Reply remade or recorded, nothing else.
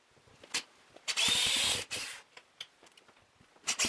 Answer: recorded